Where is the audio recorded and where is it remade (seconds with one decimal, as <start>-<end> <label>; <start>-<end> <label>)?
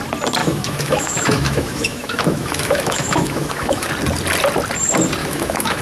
0.0-0.4 recorded; 0.4-3.9 remade; 3.9-5.2 recorded; 5.2-5.8 remade